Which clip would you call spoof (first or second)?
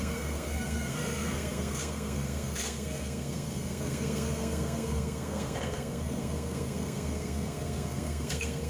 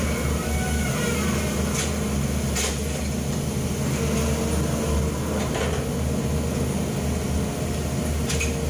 first